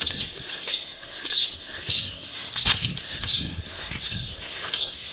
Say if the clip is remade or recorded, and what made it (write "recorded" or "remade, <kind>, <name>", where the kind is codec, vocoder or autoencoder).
remade, codec, SNAC